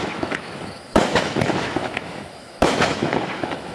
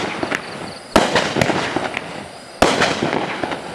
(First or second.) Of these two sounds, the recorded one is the second